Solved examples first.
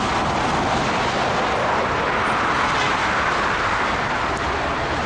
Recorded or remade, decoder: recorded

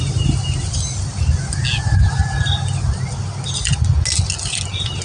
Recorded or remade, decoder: recorded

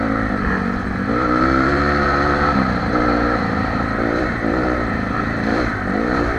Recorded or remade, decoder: remade, vocoder, BigVGAN v2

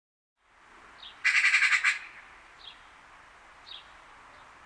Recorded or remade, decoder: recorded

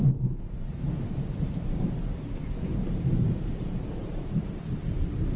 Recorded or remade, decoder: remade, vocoder, BigVGAN v2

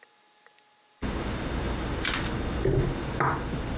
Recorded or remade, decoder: recorded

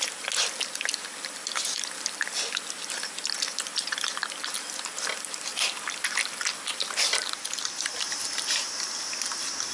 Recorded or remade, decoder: recorded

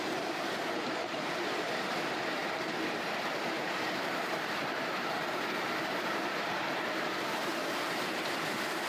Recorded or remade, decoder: remade, vocoder, BigVGAN v2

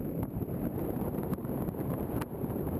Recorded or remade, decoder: remade, vocoder, BigVGAN v2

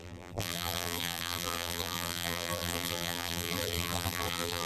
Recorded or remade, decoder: remade, vocoder, BigVGAN v2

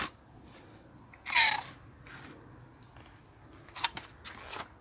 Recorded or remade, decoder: recorded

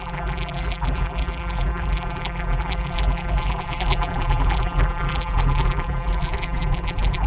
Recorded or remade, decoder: remade, vocoder, BigVGAN v2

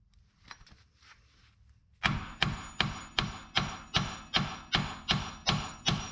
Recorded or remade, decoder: recorded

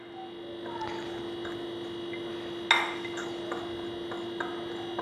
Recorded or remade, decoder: recorded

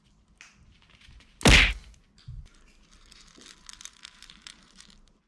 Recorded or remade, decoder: recorded